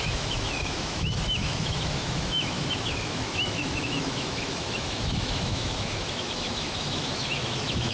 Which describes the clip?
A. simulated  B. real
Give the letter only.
A